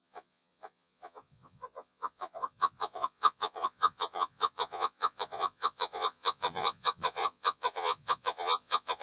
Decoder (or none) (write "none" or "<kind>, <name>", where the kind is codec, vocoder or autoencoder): vocoder, Vocos